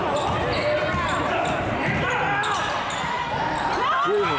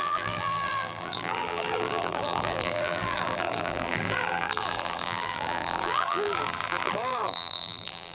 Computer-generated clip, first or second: second